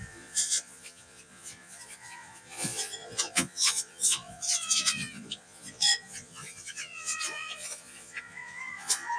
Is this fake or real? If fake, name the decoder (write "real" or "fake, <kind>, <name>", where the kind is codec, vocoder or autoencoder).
fake, vocoder, Vocos